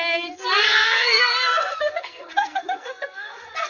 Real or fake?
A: fake